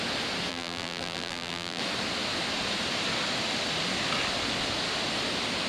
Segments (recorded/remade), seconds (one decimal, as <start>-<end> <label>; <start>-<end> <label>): 0.0-0.5 recorded; 0.5-1.8 remade; 1.8-5.7 recorded